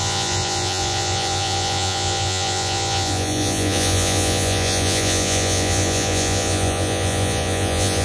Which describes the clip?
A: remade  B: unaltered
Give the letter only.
A